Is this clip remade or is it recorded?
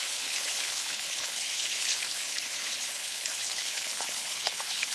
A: remade